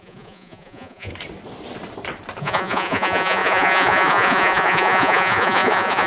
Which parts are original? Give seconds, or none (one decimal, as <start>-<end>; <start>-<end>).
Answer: 1.1-2.4